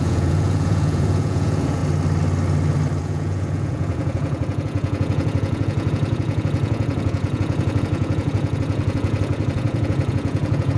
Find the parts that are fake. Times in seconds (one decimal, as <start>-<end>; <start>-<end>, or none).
0.0-1.8; 3.0-10.8